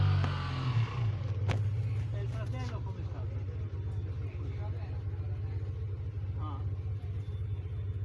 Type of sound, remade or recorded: recorded